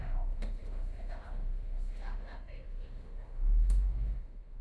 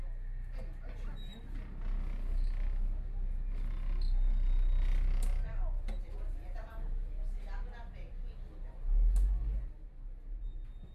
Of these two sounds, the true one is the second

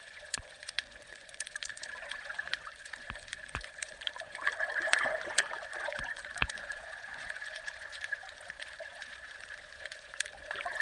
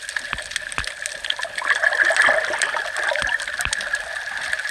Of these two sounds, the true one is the second